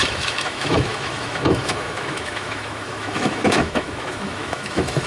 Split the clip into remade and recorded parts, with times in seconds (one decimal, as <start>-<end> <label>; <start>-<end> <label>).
0.0-5.1 remade